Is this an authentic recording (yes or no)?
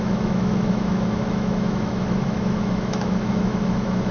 no